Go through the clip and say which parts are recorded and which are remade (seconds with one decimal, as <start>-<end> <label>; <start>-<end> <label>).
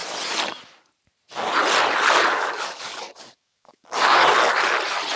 0.0-2.3 recorded; 2.3-4.2 remade; 4.2-5.2 recorded